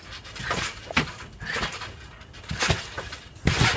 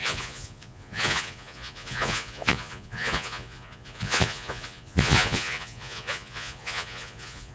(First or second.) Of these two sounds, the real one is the first